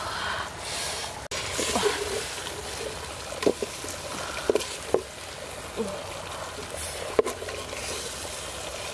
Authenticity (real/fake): real